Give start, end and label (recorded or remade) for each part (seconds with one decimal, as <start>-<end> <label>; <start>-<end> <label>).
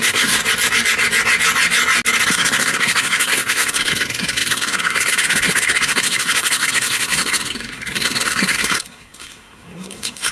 0.0-0.4 remade; 0.4-2.3 recorded; 2.3-10.3 remade